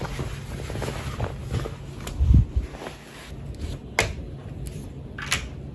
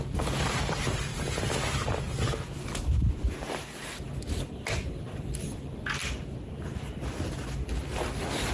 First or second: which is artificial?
second